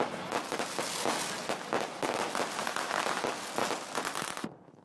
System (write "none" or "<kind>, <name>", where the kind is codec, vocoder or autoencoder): none